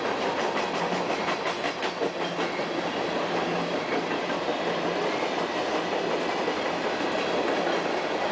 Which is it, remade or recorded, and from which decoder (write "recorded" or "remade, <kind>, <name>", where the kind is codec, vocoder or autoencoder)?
recorded